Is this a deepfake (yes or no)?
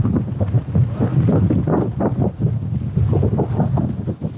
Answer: no